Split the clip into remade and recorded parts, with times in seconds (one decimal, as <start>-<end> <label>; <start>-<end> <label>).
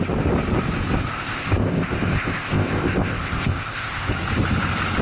0.0-1.1 recorded; 1.1-4.1 remade; 4.1-5.0 recorded